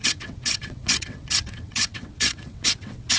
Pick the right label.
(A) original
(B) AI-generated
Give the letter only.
B